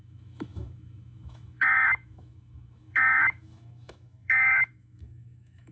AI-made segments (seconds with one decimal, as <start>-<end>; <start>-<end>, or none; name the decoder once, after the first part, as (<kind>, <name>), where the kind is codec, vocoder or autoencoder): 0.0-5.7 (autoencoder, DAC-VAE)